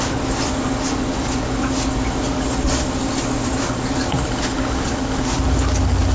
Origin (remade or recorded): recorded